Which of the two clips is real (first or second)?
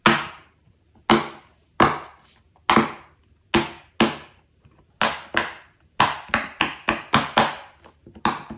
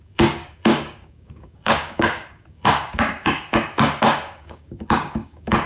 first